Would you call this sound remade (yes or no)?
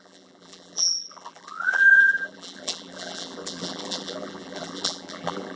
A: yes